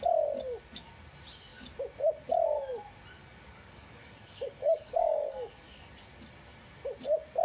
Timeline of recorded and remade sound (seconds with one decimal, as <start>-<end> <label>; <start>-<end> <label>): 0.0-3.2 recorded; 3.2-5.8 remade; 5.8-7.4 recorded